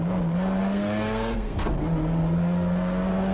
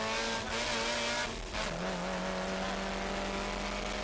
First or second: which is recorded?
second